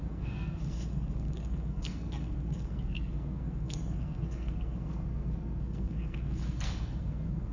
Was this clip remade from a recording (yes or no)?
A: yes